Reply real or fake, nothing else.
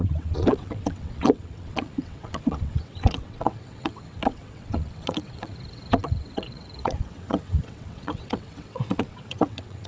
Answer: fake